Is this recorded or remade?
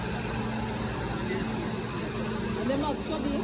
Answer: recorded